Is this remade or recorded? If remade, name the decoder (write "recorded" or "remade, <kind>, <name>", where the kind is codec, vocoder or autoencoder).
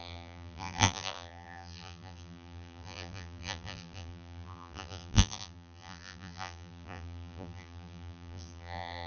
remade, vocoder, BigVGAN v2